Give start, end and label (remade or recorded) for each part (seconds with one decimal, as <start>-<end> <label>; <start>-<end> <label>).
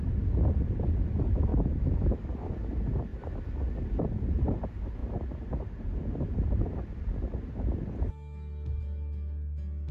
0.0-1.5 recorded; 1.5-2.3 remade; 2.3-9.9 recorded